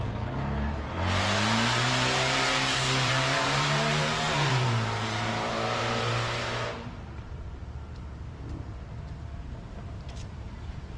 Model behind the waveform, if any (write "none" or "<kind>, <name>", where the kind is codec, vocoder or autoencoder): vocoder, BigVGAN v2